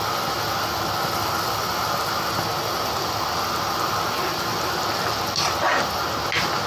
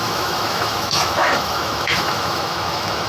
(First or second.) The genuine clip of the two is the first